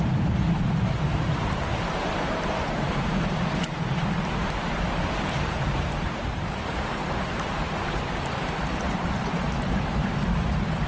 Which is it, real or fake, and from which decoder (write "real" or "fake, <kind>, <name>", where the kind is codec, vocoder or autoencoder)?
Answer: fake, vocoder, BigVGAN v2